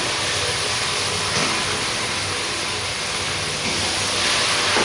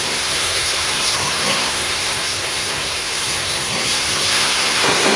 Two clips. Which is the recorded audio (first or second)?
first